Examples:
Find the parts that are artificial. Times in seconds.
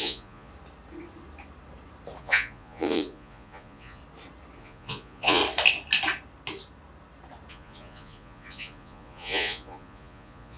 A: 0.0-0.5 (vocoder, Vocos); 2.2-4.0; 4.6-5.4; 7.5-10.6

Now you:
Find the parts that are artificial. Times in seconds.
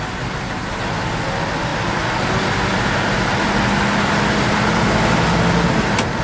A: none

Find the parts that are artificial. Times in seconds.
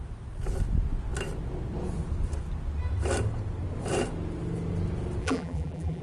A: 5.2-6.0 (vocoder, BigVGAN v2)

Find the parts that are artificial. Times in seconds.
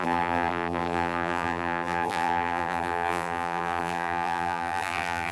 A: 0.0-5.3 (vocoder, BigVGAN v2)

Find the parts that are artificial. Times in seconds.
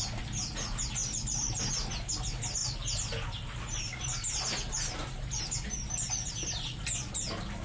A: none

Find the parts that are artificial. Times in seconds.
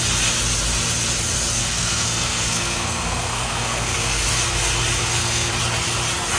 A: 1.6-4.3 (codec, SNAC); 5.0-5.5